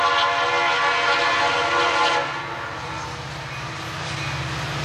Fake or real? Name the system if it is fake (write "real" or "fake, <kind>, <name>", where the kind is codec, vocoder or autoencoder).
real